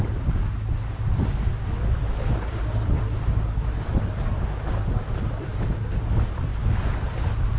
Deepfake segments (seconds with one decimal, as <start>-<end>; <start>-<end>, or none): none